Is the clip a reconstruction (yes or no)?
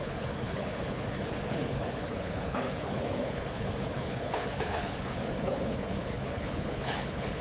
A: yes